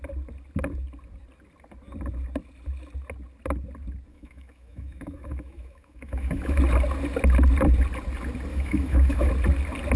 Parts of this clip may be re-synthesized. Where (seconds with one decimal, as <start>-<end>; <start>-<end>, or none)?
4.1-6.6; 8.5-9.3